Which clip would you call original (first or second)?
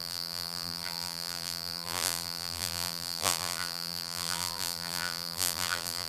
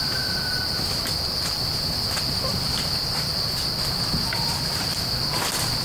second